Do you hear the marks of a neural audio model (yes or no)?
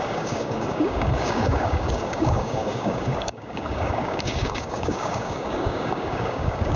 yes